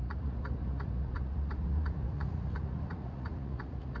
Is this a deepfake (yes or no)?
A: yes